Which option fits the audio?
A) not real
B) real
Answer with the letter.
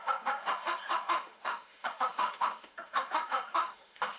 A